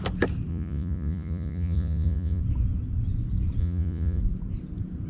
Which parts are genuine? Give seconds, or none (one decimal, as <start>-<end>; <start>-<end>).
0.0-0.5; 2.4-3.6; 4.2-5.1